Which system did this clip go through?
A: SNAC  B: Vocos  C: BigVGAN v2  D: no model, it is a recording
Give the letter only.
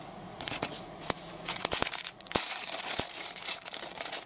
B